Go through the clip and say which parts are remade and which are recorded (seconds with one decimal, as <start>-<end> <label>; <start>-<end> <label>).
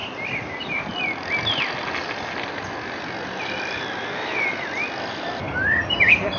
0.0-6.4 recorded